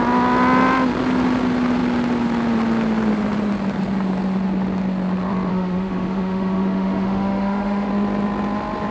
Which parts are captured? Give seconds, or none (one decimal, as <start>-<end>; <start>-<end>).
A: 0.0-5.5; 7.9-8.9